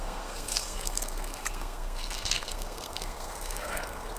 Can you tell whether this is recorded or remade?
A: remade